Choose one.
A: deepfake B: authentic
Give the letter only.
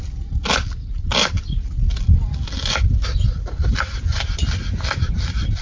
B